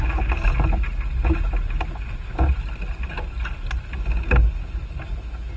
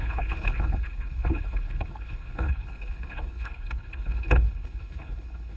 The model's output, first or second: second